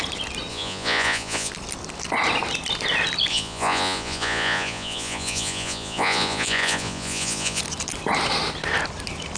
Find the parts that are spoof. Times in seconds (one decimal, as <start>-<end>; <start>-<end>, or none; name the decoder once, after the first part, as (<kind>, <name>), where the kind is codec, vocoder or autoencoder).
0.5-1.5 (vocoder, Vocos); 3.3-7.6